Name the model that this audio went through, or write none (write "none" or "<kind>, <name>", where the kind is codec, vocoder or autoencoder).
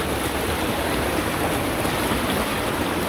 none